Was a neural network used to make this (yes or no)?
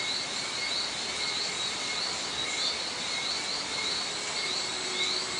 no